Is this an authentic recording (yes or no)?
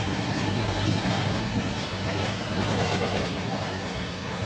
no